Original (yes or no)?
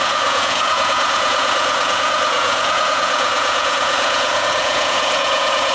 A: no